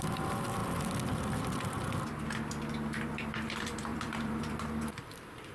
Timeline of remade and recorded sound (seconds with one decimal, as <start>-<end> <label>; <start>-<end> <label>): 0.0-0.6 remade; 0.6-3.1 recorded; 3.1-5.5 remade